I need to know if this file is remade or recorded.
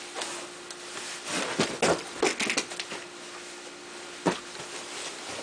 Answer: recorded